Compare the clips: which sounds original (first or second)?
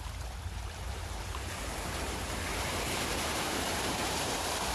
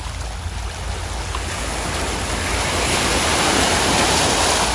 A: second